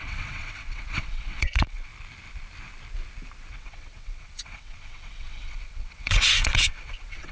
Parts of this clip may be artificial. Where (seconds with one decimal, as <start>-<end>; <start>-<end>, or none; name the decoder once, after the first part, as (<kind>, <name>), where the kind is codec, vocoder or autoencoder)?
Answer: 0.0-1.9 (vocoder, WaveNeXt); 3.5-7.3